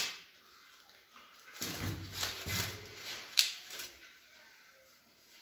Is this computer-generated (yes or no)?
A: yes